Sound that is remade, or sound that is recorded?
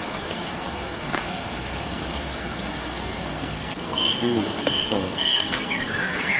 remade